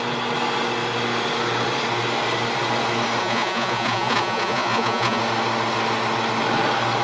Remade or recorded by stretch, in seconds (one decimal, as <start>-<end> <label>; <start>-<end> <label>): 0.0-3.2 recorded; 3.2-5.2 remade; 5.2-7.0 recorded